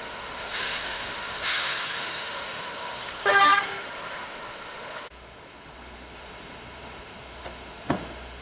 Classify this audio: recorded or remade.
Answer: remade